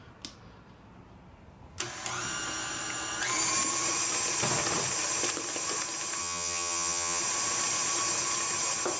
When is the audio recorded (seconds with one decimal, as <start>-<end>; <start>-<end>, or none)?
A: 0.0-6.2; 7.2-9.0

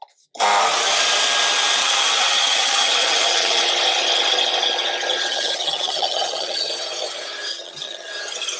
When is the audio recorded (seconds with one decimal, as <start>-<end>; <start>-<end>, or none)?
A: 0.0-1.8; 3.6-5.3; 6.7-7.5; 8.1-8.6

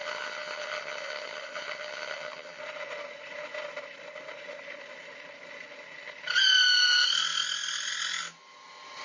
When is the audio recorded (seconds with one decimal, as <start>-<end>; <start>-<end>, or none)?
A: 2.6-9.0

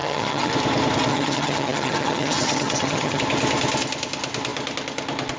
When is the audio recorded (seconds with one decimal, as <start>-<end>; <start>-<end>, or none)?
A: 0.5-1.1; 3.2-5.4